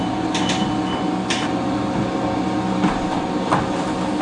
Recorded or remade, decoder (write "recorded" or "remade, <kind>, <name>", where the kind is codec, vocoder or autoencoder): recorded